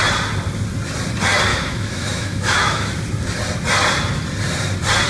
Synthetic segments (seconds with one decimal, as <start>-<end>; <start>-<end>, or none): 1.5-2.9